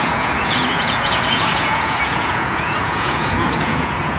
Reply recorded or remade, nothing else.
remade